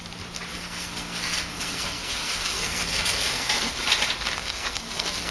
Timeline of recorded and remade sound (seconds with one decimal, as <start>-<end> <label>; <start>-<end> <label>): 0.0-0.5 recorded; 0.5-3.7 remade; 3.7-4.4 recorded; 4.4-5.3 remade